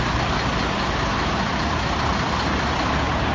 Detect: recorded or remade recorded